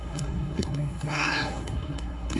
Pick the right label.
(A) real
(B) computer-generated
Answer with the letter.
B